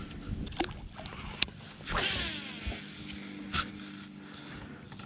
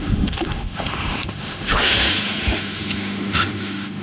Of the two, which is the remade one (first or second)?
second